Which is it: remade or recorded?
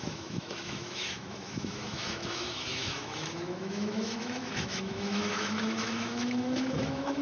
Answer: remade